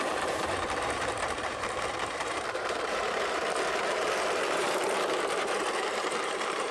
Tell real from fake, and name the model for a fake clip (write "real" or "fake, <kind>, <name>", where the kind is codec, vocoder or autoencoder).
fake, vocoder, BigVGAN v2